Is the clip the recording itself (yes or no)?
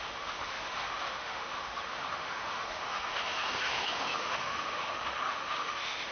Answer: no